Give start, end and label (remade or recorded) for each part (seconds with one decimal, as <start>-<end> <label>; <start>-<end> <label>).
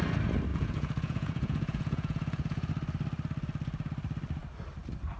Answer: 0.0-0.5 recorded; 0.5-2.7 remade; 2.7-5.2 recorded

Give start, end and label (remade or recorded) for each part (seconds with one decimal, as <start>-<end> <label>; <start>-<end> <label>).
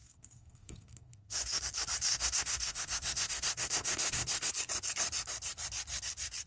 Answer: 0.0-1.6 remade; 1.6-2.1 recorded; 2.1-4.5 remade; 4.5-6.5 recorded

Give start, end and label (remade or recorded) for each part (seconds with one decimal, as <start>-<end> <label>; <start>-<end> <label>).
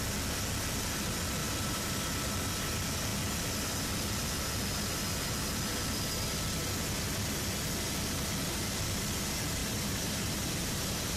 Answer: 0.0-1.4 recorded; 1.4-2.0 remade; 2.0-9.6 recorded; 9.6-11.2 remade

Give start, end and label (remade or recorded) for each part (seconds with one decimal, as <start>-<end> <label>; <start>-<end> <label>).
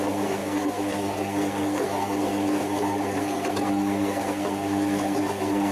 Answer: 0.0-5.7 remade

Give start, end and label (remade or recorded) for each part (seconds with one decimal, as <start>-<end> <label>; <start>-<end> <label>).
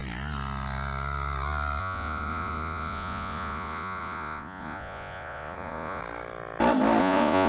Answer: 0.0-1.8 recorded; 1.8-6.0 remade; 6.0-7.0 recorded; 7.0-7.5 remade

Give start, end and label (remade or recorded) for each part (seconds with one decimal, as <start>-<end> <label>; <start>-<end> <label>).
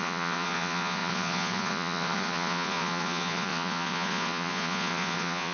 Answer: 0.0-5.5 remade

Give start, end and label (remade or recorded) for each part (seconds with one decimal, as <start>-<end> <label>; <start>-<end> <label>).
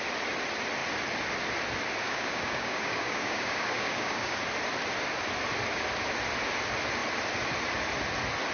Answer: 0.0-2.0 recorded; 2.0-4.4 remade; 4.4-8.5 recorded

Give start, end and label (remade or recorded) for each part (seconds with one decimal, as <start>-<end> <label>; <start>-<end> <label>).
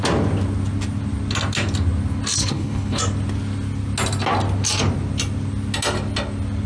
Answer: 0.0-2.4 recorded; 2.4-3.0 remade; 3.0-6.7 recorded